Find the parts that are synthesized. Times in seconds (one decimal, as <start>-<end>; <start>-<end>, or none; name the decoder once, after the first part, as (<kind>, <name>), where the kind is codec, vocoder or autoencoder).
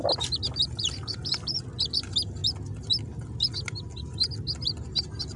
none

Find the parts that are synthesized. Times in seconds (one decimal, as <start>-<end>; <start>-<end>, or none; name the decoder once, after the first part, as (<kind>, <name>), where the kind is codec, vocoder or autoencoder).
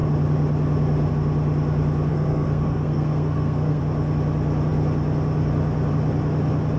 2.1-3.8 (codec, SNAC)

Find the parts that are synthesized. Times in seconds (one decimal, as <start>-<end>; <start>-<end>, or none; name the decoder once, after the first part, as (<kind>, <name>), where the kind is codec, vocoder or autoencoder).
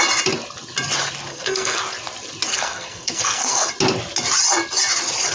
1.3-1.8 (codec, SNAC); 2.5-3.7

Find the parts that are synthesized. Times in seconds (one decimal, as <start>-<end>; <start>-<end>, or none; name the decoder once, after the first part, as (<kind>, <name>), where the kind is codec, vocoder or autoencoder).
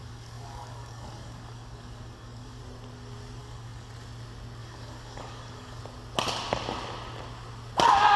0.0-2.6 (codec, DAC); 3.4-3.9; 4.6-5.8